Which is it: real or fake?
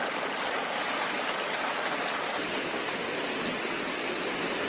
real